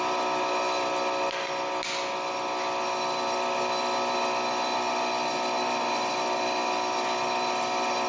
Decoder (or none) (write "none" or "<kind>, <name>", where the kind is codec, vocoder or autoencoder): none